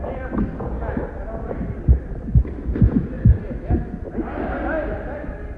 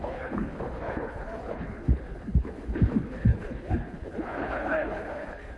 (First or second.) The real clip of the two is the first